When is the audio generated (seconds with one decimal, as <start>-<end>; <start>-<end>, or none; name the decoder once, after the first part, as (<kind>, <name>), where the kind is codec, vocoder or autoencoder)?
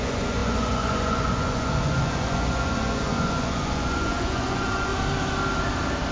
0.0-4.9 (vocoder, Vocos)